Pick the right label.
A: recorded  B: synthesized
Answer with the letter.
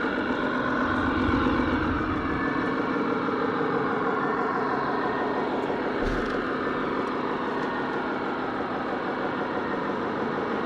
A